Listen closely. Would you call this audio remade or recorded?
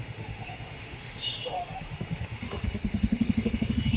remade